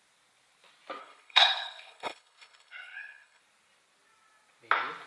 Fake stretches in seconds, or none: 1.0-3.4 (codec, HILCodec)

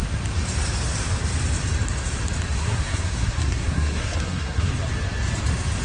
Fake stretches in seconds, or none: 2.6-4.7 (codec, SNAC)

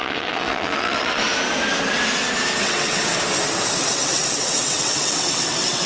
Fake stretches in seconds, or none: 0.0-1.3 (vocoder, WaveNeXt); 2.6-3.1; 3.8-5.9

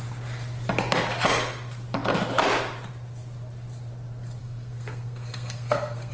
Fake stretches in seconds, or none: 4.4-6.1 (codec, SNAC)

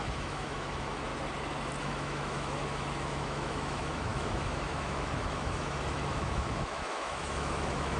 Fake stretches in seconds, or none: 0.0-1.1 (autoencoder, DAC-VAE); 1.8-8.0